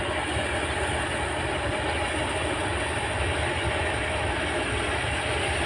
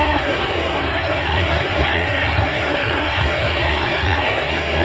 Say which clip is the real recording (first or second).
first